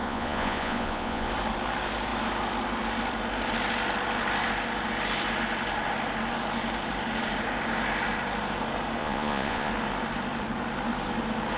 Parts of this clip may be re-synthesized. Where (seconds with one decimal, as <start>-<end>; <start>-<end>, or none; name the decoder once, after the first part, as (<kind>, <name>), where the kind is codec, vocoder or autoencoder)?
0.0-1.3 (vocoder, Vocos); 9.0-9.7